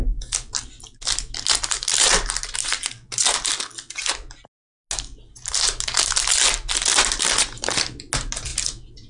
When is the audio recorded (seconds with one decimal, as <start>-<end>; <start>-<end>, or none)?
0.0-9.1

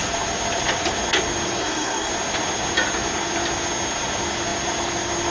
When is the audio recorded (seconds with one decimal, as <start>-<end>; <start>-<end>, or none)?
0.0-1.6; 2.1-5.3

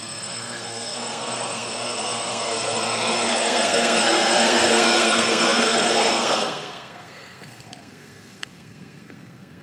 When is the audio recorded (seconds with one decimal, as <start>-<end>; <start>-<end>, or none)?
none

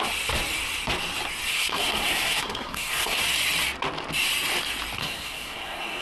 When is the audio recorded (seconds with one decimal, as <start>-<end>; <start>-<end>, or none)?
0.0-1.5; 3.2-5.0

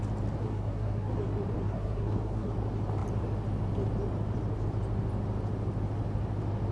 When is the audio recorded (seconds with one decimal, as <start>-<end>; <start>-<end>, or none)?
0.0-0.4; 1.1-1.6; 2.5-6.7